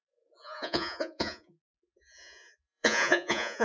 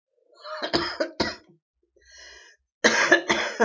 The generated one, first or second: first